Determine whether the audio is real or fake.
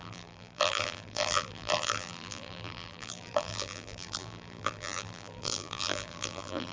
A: fake